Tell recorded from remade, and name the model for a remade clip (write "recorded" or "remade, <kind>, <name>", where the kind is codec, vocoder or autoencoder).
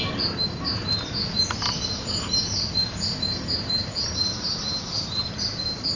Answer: recorded